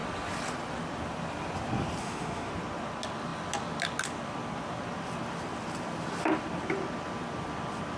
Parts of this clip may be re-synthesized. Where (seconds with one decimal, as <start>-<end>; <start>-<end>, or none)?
2.0-2.5

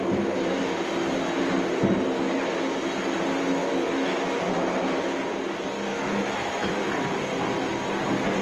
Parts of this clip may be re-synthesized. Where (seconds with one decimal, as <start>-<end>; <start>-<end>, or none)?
3.6-4.5; 5.9-6.9

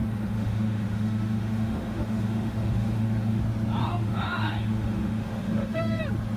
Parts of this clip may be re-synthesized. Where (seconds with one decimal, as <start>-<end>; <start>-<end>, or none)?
0.0-3.4; 3.8-6.0

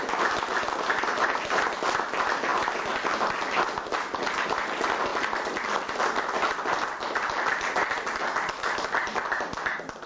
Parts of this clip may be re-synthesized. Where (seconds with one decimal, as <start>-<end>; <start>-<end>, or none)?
none

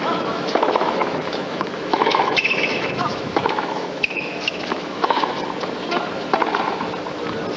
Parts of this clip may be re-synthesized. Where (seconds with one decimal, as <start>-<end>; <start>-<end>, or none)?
0.0-5.3